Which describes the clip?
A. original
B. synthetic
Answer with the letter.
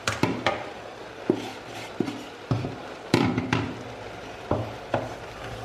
B